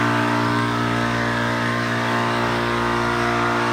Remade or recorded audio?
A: remade